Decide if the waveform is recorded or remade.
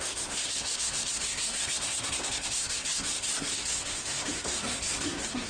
remade